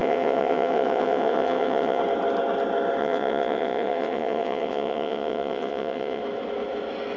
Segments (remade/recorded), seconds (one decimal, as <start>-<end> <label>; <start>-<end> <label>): 0.0-2.0 remade; 2.0-3.0 recorded; 3.0-6.2 remade; 6.2-7.2 recorded